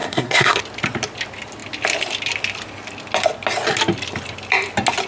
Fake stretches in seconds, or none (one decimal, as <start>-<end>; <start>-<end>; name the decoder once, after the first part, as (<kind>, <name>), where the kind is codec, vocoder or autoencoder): 0.0-0.6 (codec, SNAC)